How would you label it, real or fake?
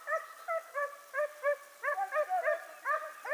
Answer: fake